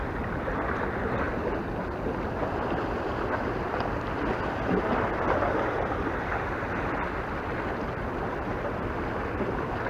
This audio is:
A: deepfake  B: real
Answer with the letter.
B